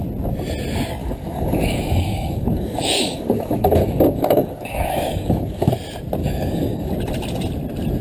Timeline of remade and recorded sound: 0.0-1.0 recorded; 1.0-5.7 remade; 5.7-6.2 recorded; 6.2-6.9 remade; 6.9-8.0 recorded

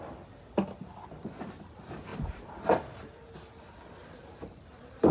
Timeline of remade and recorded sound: 0.0-2.1 recorded; 2.1-3.3 remade; 3.3-4.0 recorded; 4.0-5.1 remade

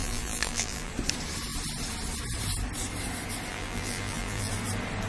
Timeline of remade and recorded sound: 0.0-0.9 remade; 0.9-3.5 recorded; 3.5-4.5 remade; 4.5-5.1 recorded

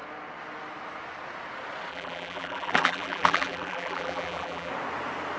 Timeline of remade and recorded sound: 0.0-1.9 recorded; 1.9-4.7 remade; 4.7-5.4 recorded

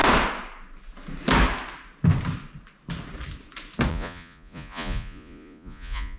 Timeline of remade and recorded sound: 0.0-3.9 recorded; 3.9-6.2 remade